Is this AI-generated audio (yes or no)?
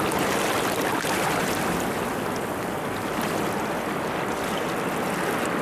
no